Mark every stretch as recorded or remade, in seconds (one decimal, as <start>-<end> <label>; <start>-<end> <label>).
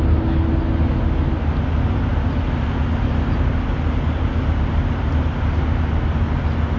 0.0-6.8 recorded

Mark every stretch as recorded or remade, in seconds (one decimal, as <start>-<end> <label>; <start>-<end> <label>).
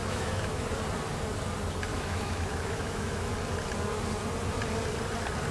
0.0-0.6 remade; 0.6-1.9 recorded; 1.9-3.3 remade; 3.3-5.5 recorded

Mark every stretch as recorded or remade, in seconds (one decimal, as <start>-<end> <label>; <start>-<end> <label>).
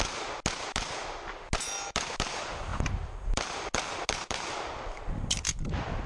0.0-6.1 recorded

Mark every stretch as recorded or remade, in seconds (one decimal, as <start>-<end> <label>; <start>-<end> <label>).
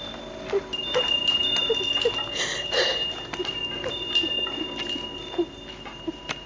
0.0-6.5 recorded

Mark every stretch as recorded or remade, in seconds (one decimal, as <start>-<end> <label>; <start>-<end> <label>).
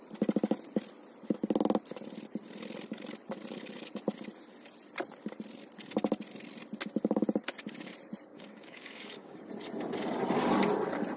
0.0-8.3 recorded; 8.3-9.5 remade; 9.5-11.2 recorded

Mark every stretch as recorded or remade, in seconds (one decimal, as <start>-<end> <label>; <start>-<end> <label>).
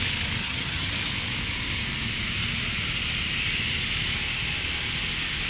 0.0-0.4 recorded; 0.4-0.9 remade; 0.9-5.5 recorded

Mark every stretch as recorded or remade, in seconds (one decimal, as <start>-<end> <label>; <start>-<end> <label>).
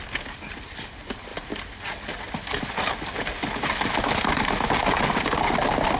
0.0-6.0 recorded